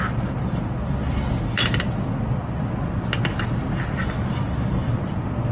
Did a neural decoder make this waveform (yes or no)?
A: no